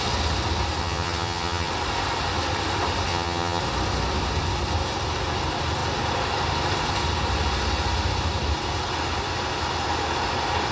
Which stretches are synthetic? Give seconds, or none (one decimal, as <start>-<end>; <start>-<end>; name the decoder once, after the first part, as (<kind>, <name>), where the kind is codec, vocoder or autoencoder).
0.8-1.7 (vocoder, HiFi-GAN); 3.1-3.6